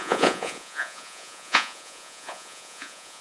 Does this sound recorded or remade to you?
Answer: remade